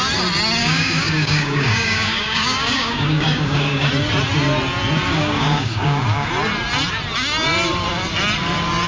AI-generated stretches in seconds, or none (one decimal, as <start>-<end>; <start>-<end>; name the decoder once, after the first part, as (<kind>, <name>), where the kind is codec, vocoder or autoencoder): 0.6-3.9 (codec, DAC); 5.1-6.3